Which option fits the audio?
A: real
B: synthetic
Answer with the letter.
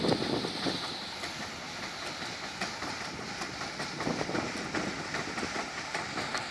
B